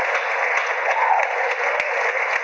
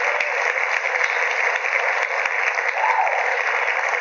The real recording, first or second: second